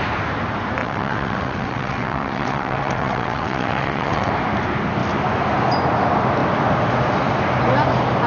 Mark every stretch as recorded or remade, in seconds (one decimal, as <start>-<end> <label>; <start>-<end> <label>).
0.0-0.8 recorded; 0.8-4.3 remade; 4.3-8.3 recorded